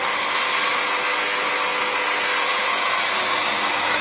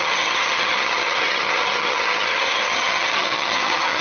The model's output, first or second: second